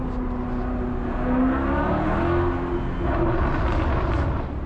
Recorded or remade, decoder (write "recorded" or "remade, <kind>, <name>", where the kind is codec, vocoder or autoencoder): recorded